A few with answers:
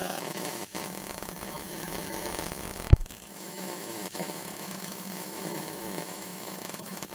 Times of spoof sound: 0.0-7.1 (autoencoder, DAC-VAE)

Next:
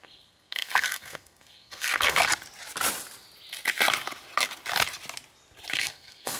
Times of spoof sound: 0.0-2.3 (codec, SNAC); 5.7-6.4

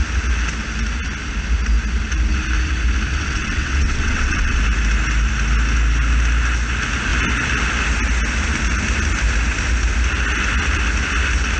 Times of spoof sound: 3.1-4.6 (vocoder, WaveNeXt)

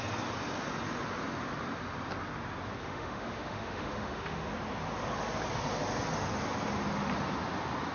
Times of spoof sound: 2.8-4.5 (autoencoder, DAC-VAE)

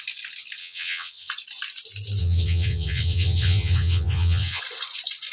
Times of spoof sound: 0.6-1.3 (vocoder, WaveNeXt); 2.2-4.6